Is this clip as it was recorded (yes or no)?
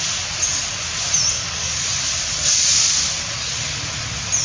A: yes